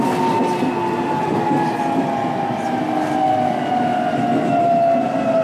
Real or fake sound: real